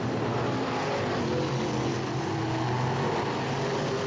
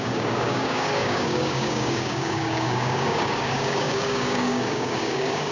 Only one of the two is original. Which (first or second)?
first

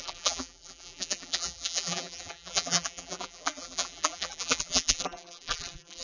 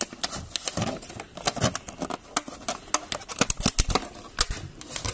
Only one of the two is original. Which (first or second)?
second